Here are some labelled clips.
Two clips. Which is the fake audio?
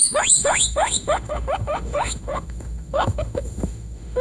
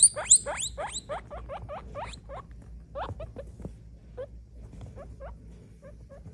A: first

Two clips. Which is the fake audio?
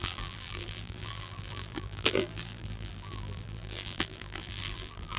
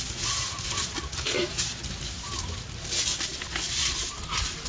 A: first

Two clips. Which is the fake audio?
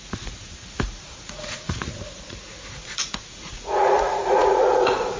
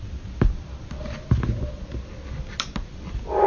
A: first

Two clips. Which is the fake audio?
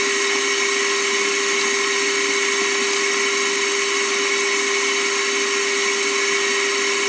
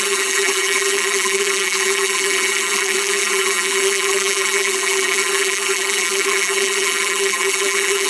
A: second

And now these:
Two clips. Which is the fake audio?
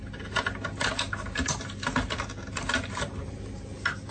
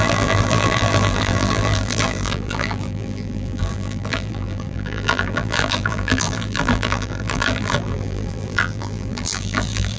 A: second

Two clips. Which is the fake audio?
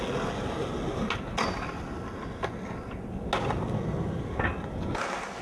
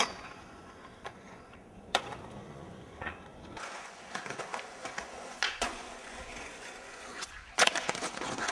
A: second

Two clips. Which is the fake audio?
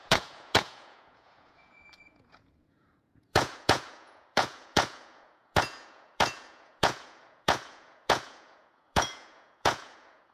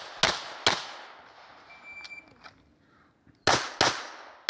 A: first